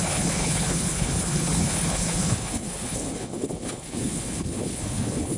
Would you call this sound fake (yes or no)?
yes